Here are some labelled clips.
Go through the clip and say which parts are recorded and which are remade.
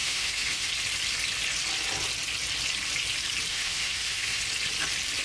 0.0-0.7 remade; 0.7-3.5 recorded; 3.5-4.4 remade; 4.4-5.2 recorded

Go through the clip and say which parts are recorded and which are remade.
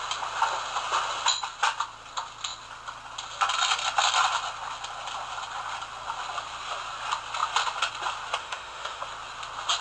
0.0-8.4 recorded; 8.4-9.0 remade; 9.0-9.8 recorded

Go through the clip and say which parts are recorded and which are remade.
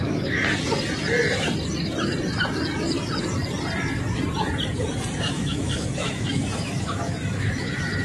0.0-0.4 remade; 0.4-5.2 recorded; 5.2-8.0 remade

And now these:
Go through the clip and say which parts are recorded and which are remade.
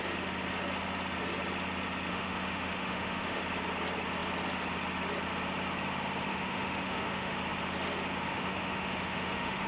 0.0-2.1 recorded; 2.1-3.4 remade; 3.4-6.3 recorded; 6.3-7.4 remade; 7.4-8.3 recorded; 8.3-9.7 remade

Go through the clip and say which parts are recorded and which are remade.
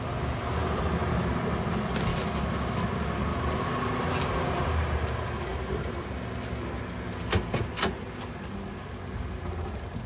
0.0-2.1 recorded; 2.1-2.8 remade; 2.8-10.1 recorded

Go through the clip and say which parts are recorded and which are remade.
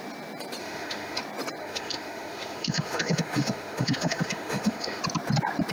0.0-0.6 recorded; 0.6-1.2 remade; 1.2-1.6 recorded; 1.6-5.0 remade; 5.0-5.7 recorded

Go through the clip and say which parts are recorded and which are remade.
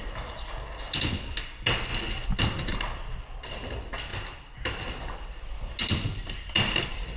0.0-7.2 recorded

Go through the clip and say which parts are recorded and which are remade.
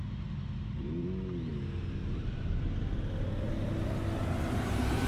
0.0-5.1 recorded